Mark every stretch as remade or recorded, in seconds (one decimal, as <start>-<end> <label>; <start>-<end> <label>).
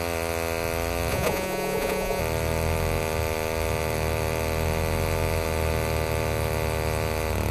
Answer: 0.0-1.1 recorded; 1.1-2.2 remade; 2.2-7.5 recorded